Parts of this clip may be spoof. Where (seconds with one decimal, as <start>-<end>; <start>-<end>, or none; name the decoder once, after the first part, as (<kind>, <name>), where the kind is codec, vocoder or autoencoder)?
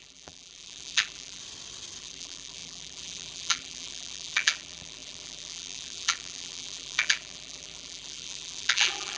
0.0-1.4 (vocoder, BigVGAN v2); 2.0-9.2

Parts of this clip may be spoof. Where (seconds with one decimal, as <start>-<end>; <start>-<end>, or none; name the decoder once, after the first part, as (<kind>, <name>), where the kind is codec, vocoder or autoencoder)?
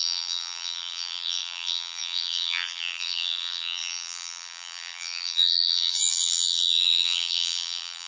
0.0-8.1 (vocoder, BigVGAN v2)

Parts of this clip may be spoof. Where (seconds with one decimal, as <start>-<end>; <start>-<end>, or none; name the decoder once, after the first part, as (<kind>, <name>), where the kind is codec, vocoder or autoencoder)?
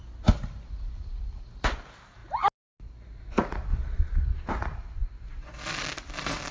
3.7-4.5 (vocoder, Vocos)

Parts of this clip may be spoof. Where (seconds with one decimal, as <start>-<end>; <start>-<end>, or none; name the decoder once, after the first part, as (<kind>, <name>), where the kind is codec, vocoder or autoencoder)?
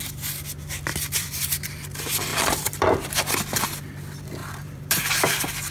0.9-1.8 (vocoder, BigVGAN v2); 2.3-3.1; 4.4-5.0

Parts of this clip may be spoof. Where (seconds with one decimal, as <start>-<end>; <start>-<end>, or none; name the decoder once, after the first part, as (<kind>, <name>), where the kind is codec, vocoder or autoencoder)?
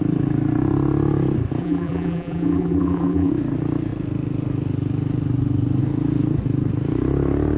1.6-3.3 (vocoder, BigVGAN v2)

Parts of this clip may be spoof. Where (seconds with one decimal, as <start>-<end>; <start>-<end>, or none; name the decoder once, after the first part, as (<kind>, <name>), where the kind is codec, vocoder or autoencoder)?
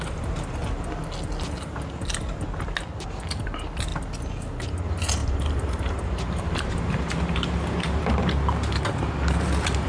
5.2-8.3 (vocoder, BigVGAN v2)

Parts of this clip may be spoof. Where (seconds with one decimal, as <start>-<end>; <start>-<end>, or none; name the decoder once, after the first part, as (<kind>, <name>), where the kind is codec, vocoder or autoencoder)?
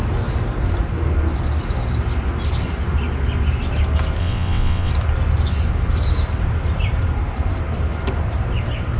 4.2-4.9 (vocoder, WaveNeXt)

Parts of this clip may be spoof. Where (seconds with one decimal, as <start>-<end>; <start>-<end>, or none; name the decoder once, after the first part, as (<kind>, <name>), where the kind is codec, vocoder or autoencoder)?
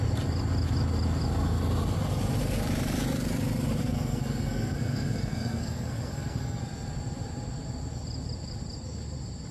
3.8-6.6 (codec, SNAC)